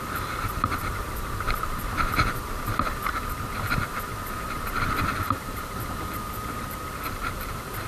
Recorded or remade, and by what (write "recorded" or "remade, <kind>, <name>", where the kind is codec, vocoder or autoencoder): remade, vocoder, BigVGAN v2